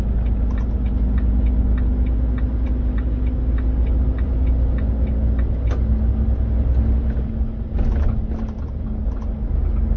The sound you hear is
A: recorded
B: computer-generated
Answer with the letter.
A